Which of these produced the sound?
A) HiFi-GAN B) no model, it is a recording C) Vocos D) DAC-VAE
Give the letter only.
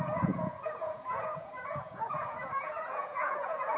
C